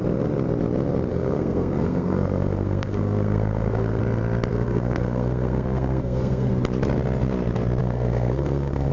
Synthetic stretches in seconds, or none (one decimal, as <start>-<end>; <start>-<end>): 1.1-4.0; 4.5-6.5; 7.8-8.9